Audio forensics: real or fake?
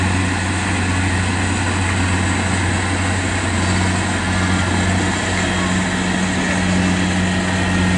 real